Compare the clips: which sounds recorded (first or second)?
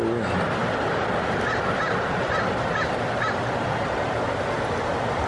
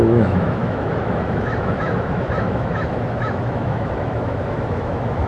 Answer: first